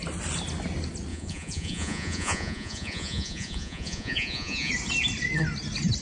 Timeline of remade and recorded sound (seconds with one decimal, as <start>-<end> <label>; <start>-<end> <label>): 0.0-1.1 recorded; 1.1-4.7 remade; 4.7-6.0 recorded